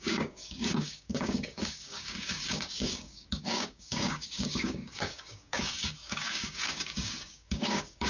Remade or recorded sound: remade